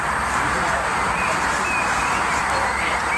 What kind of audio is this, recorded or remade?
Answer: recorded